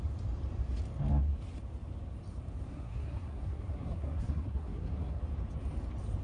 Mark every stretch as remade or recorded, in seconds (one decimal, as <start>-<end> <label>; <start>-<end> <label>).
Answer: 0.0-2.7 recorded; 2.7-5.2 remade; 5.2-6.2 recorded